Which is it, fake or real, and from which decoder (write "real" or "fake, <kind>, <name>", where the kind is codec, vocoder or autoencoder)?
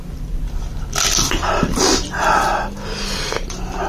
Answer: real